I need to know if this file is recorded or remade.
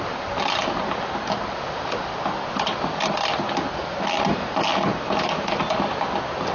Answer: recorded